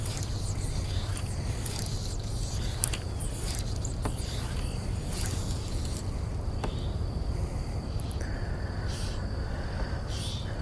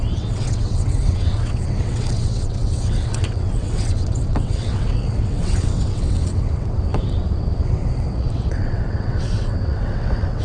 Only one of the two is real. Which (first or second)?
first